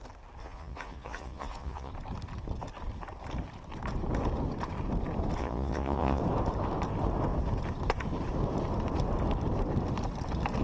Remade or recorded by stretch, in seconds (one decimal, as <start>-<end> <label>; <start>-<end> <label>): 0.0-0.4 recorded; 0.4-1.9 remade; 1.9-5.4 recorded; 5.4-6.2 remade; 6.2-10.6 recorded